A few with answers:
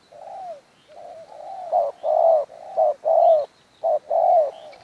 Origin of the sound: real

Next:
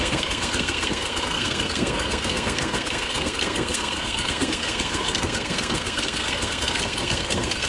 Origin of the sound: fake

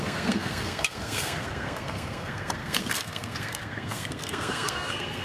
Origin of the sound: fake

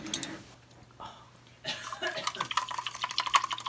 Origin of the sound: real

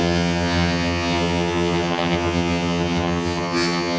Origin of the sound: fake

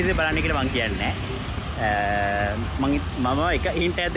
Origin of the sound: real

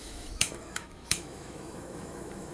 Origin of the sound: fake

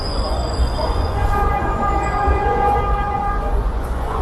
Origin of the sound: fake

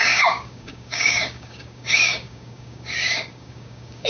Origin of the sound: fake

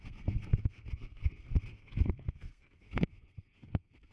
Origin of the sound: fake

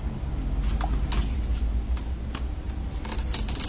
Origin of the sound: real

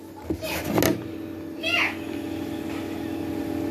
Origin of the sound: real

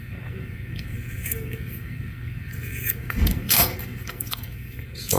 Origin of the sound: fake